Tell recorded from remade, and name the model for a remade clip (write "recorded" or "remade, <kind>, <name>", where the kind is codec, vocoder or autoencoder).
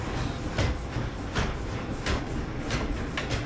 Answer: recorded